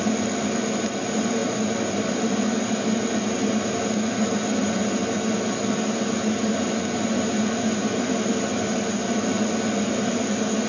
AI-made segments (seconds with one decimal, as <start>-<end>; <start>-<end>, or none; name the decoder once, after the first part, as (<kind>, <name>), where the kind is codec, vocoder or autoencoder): none